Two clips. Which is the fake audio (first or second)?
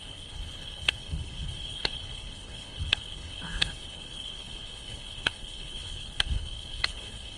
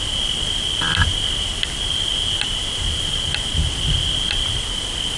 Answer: first